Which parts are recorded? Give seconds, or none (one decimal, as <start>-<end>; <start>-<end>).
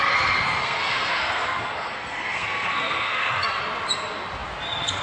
0.0-0.6; 3.6-5.0